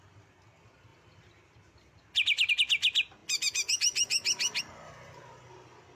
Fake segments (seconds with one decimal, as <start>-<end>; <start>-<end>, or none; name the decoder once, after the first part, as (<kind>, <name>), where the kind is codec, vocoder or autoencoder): none